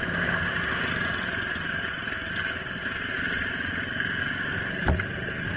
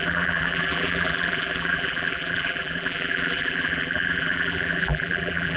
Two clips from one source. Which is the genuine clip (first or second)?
first